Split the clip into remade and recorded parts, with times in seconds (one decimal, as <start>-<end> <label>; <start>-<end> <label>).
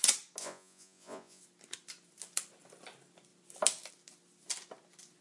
0.0-0.4 recorded; 0.4-1.4 remade; 1.4-5.2 recorded